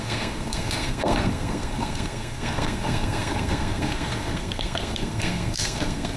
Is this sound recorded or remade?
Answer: remade